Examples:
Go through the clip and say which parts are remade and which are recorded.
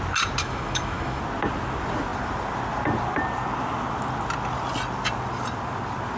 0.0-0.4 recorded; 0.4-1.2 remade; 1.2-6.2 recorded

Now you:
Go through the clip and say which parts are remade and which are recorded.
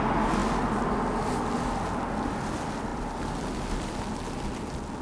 0.0-2.9 recorded; 2.9-3.9 remade; 3.9-5.0 recorded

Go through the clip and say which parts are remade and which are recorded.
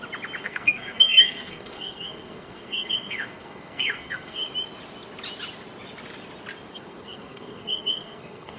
0.0-0.4 recorded; 0.4-4.5 remade; 4.5-6.7 recorded; 6.7-8.6 remade